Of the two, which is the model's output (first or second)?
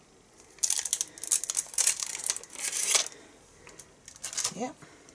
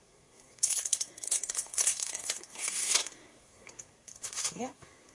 second